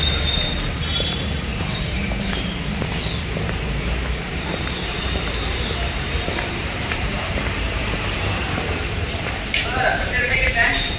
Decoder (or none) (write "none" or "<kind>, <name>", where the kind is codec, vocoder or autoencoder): vocoder, BigVGAN v2